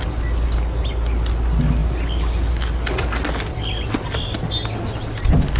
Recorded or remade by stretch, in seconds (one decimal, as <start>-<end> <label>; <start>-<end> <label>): 0.0-5.6 recorded